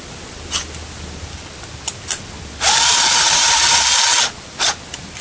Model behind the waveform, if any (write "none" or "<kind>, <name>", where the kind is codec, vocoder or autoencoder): none